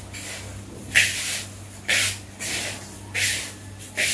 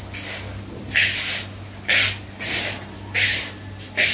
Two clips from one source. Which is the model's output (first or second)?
first